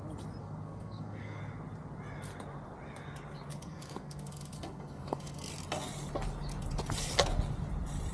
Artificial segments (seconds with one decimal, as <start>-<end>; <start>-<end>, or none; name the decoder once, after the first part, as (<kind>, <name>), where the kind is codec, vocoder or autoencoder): 0.4-1.4 (codec, SNAC); 3.5-5.5